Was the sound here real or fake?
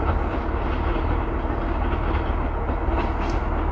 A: real